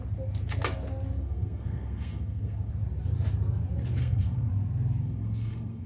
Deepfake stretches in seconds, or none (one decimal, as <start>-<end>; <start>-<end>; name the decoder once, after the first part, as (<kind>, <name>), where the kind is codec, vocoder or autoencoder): 1.2-2.7 (codec, SNAC); 4.0-4.5; 5.0-5.9